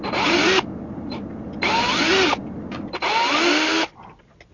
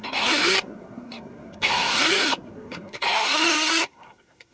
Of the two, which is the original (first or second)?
first